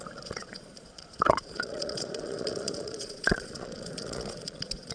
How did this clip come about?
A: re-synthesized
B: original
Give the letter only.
A